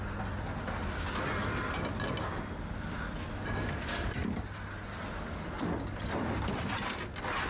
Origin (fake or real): real